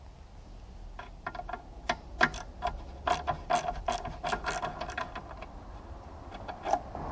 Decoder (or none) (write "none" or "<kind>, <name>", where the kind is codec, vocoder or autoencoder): none